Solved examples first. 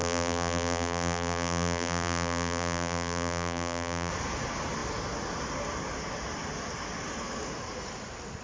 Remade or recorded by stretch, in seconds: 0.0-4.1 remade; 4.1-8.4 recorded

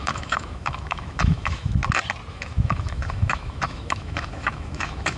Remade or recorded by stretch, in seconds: 0.0-1.8 remade; 1.8-2.3 recorded; 2.3-5.2 remade